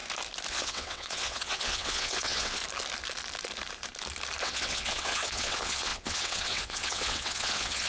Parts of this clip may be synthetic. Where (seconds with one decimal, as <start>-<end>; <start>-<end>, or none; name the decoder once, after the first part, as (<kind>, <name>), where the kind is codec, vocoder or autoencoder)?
0.5-2.6 (vocoder, WaveNeXt); 4.4-7.9